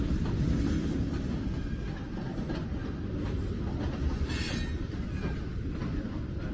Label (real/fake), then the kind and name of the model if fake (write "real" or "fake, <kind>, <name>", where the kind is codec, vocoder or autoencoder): real